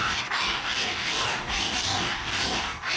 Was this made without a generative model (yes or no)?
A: no